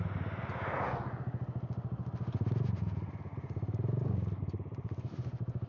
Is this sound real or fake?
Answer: real